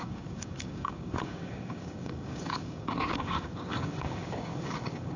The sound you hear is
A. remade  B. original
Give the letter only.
A